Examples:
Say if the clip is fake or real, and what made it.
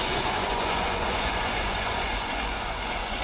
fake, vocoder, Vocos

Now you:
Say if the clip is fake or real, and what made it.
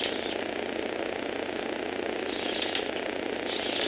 real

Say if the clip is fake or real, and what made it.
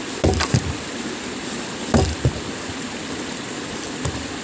real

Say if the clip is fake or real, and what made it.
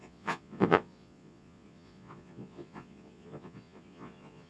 fake, vocoder, Vocos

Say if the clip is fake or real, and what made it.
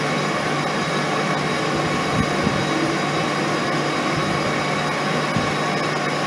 real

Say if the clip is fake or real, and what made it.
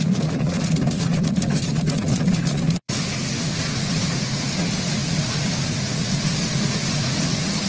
fake, vocoder, Vocos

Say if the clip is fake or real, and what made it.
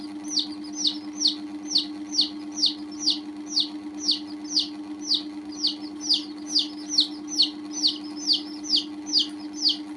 real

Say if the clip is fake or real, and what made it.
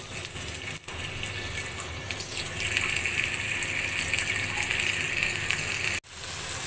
real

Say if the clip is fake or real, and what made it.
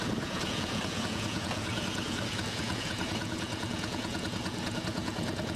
fake, vocoder, Vocos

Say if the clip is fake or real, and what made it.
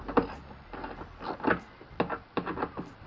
real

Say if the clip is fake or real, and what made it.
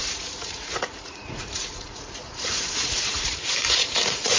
fake, vocoder, Vocos